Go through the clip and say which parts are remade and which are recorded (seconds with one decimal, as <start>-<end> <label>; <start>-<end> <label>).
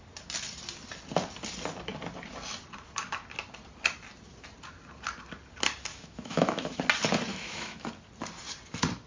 0.0-5.9 recorded; 5.9-6.8 remade; 6.8-7.3 recorded; 7.3-7.9 remade; 7.9-9.1 recorded